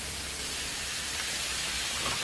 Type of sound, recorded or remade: recorded